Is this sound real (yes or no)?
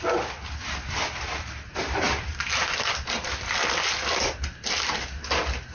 yes